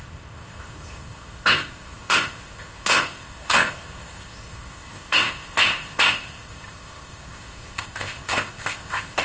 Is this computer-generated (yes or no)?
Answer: yes